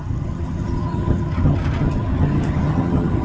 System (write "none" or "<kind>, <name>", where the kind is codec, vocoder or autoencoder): vocoder, HiFi-GAN